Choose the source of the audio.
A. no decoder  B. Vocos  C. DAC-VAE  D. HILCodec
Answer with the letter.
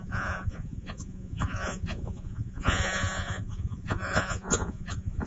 B